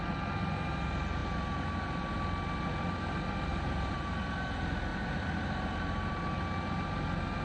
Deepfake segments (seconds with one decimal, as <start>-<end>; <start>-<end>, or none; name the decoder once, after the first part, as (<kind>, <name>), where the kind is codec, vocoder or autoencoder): 3.5-4.1 (vocoder, BigVGAN v2); 4.9-6.2